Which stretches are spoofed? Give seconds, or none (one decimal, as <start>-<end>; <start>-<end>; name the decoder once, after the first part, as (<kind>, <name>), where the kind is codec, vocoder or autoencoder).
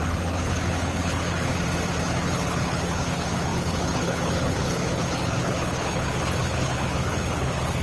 0.0-1.5 (codec, HILCodec); 2.0-7.8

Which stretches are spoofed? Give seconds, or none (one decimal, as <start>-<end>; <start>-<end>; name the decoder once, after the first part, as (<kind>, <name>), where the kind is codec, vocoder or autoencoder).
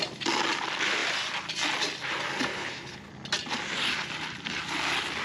2.5-3.1 (codec, HILCodec)